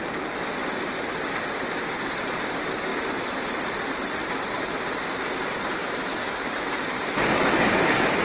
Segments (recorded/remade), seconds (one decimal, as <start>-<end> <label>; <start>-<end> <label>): 0.0-5.8 recorded; 5.8-8.2 remade